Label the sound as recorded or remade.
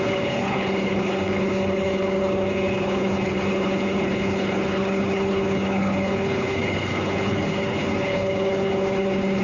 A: remade